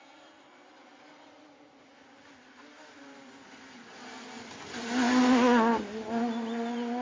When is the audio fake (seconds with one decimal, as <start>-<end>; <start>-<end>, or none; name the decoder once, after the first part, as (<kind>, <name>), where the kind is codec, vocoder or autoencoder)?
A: none